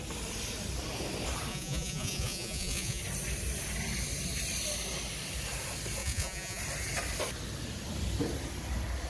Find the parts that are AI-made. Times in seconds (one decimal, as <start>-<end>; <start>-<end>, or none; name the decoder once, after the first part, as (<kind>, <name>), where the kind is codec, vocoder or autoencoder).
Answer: 1.5-3.0 (vocoder, Vocos); 6.0-6.6